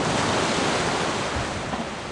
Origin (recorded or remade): recorded